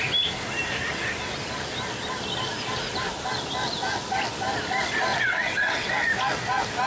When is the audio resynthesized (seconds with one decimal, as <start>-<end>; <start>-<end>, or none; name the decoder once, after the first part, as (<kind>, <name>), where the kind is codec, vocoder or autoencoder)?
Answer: 5.1-5.9 (vocoder, WaveNeXt)